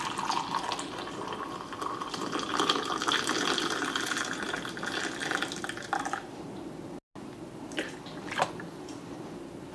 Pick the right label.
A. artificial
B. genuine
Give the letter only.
B